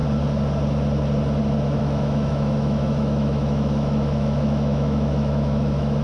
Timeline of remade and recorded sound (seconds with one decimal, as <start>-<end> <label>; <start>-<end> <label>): 0.0-1.8 recorded; 1.8-6.0 remade